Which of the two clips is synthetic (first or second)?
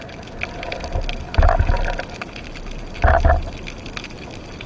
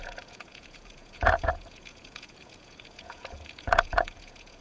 second